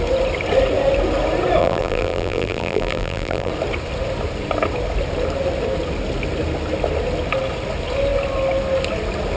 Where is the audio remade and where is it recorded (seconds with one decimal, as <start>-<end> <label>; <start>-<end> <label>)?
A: 0.0-1.6 recorded; 1.6-3.5 remade; 3.5-9.4 recorded